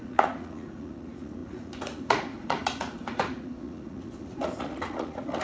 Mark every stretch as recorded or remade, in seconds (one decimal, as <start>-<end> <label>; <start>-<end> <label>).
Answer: 0.0-5.4 remade

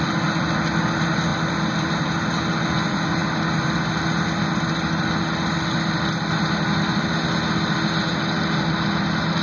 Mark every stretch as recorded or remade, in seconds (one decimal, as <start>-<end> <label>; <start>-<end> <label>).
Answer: 0.0-9.4 recorded